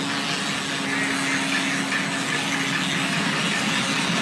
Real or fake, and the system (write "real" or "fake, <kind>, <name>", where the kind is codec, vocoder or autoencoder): real